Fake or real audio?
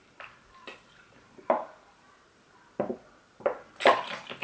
real